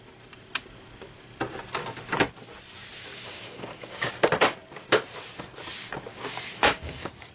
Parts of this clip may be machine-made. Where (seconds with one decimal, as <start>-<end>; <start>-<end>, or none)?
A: 3.1-4.1; 6.1-7.3